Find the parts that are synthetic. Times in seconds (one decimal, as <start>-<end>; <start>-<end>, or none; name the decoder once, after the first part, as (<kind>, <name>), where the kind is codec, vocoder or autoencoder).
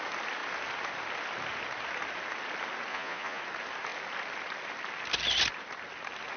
2.9-3.4 (vocoder, Vocos)